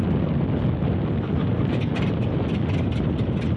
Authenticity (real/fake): real